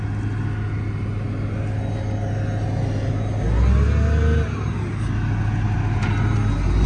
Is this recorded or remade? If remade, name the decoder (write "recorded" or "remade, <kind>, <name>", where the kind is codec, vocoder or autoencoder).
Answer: recorded